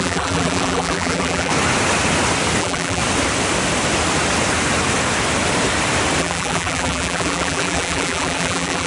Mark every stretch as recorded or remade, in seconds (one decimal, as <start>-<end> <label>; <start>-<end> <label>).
0.0-1.5 remade; 1.5-2.6 recorded; 2.6-3.0 remade; 3.0-6.2 recorded; 6.2-8.9 remade